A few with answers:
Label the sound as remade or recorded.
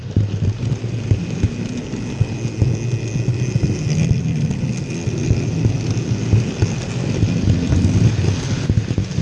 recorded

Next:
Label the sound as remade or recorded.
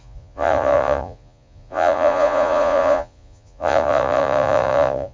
remade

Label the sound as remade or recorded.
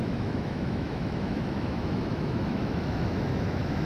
remade